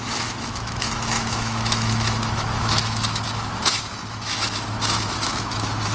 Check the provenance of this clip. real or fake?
fake